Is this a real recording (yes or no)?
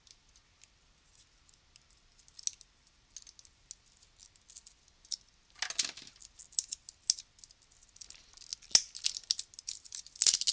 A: yes